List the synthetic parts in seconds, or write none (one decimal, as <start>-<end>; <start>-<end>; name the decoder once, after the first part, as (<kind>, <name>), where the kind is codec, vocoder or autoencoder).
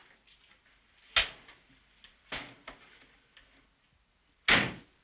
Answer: none